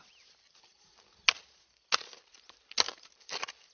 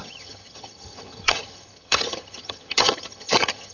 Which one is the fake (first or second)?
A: second